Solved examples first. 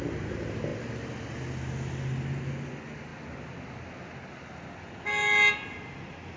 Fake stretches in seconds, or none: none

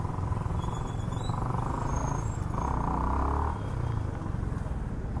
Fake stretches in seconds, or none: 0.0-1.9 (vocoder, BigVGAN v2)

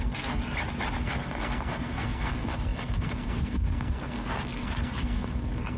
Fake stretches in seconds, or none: 0.0-0.4 (codec, SNAC); 1.0-5.8

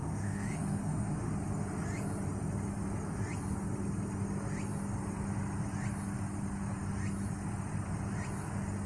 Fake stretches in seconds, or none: 0.0-1.3 (autoencoder, DAC-VAE)

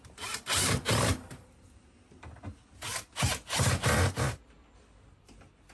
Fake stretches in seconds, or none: none

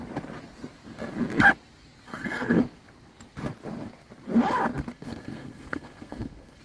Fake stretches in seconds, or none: 2.1-2.6 (codec, SNAC); 4.9-6.6